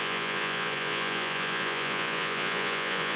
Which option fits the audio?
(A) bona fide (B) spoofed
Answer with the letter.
B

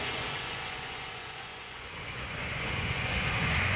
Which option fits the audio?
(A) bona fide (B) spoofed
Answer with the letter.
B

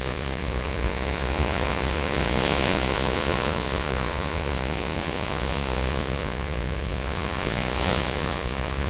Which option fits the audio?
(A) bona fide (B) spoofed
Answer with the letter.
B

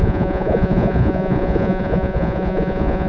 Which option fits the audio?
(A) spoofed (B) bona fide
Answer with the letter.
A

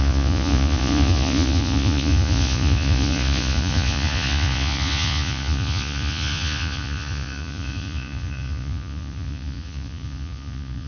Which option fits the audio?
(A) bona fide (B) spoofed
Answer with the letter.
B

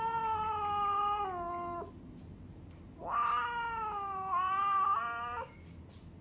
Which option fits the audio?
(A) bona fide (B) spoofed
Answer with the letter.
A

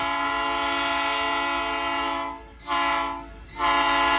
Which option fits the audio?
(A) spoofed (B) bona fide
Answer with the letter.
B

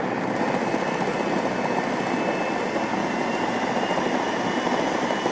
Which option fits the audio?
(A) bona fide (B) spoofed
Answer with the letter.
A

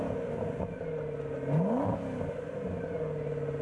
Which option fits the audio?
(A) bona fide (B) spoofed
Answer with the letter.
A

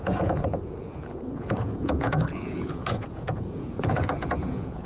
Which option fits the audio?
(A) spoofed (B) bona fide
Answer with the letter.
A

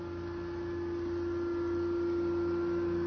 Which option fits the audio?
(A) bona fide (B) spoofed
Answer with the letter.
A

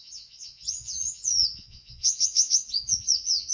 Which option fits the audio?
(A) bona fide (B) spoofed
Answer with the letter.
B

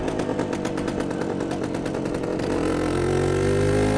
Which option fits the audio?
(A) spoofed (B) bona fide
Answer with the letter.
B